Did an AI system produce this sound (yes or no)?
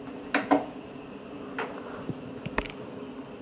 no